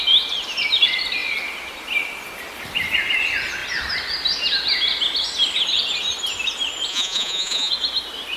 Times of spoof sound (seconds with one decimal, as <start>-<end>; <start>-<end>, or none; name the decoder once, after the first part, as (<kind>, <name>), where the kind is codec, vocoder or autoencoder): 6.9-7.7 (vocoder, Vocos)

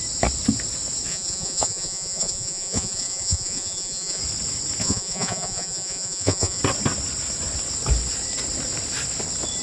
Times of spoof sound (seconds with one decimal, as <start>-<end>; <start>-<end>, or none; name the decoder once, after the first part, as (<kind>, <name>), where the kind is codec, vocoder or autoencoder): 1.1-4.2 (vocoder, Vocos); 4.8-6.6